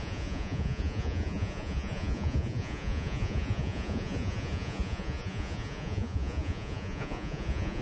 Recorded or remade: remade